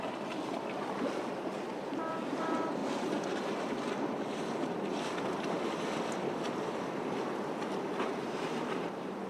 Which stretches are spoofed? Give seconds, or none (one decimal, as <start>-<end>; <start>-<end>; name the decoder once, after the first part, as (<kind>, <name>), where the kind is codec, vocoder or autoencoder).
0.0-2.8 (vocoder, BigVGAN v2); 8.0-9.3